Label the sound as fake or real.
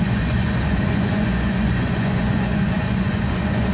fake